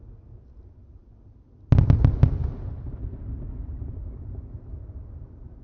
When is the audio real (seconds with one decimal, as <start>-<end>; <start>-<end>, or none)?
0.0-5.6